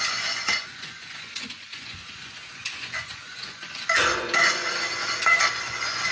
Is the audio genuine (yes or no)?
no